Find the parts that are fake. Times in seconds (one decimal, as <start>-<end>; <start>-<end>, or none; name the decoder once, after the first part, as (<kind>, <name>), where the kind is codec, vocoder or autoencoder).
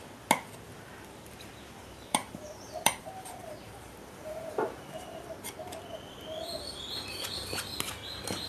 1.8-5.3 (vocoder, BigVGAN v2)